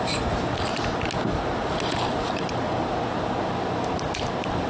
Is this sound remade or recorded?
recorded